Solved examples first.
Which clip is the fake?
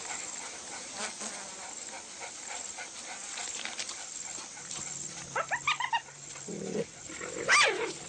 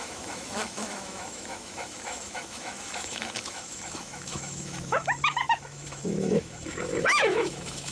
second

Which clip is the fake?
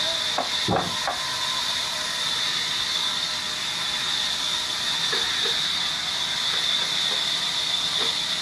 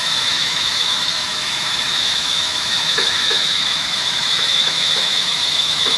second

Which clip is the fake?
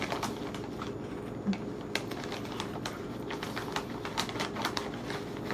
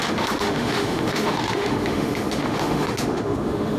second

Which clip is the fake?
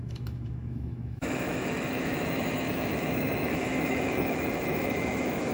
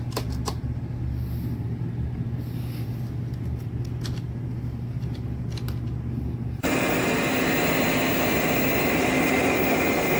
first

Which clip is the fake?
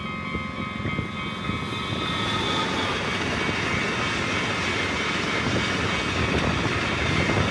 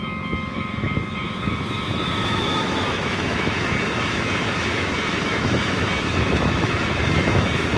second